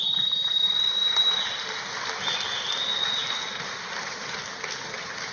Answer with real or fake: real